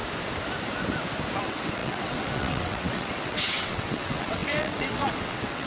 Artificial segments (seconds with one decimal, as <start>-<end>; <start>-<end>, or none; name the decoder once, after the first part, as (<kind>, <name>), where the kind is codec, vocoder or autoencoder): 1.4-5.7 (vocoder, WaveNeXt)